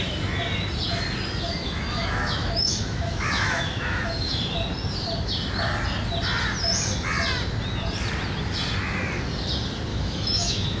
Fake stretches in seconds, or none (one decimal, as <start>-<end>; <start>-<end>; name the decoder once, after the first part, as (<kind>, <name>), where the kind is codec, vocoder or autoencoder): 1.6-4.4 (autoencoder, DAC-VAE); 9.9-10.8